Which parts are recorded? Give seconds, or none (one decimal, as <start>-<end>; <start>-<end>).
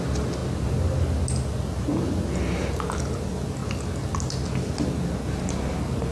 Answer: 0.0-6.1